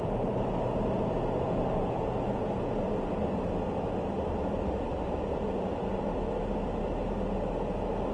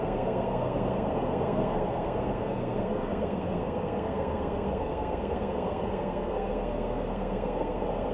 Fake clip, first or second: second